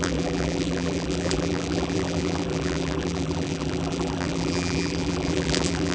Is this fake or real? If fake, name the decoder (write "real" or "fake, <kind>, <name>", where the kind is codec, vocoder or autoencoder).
fake, vocoder, BigVGAN v2